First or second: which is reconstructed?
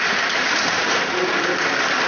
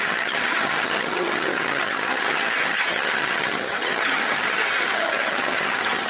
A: second